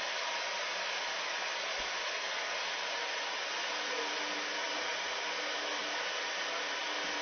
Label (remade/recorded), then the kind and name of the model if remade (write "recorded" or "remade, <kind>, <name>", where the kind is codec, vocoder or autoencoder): recorded